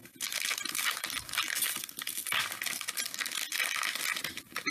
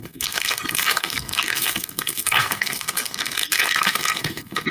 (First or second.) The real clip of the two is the first